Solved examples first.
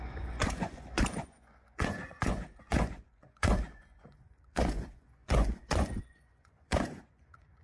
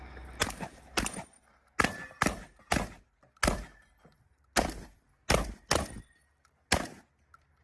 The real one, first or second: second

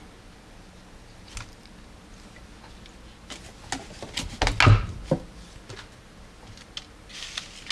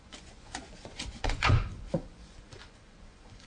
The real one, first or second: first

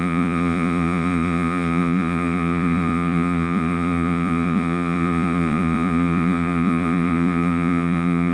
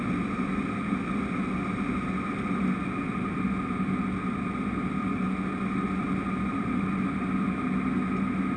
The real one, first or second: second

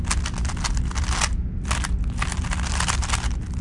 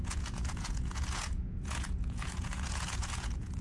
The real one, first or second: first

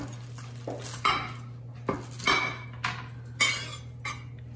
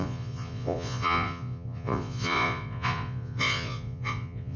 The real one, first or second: first